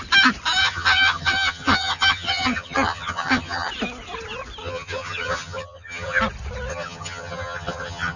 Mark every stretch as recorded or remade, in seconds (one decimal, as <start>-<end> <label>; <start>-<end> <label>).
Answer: 0.0-0.6 recorded; 0.6-3.7 remade; 3.7-4.6 recorded; 4.6-6.2 remade; 6.2-6.7 recorded; 6.7-8.2 remade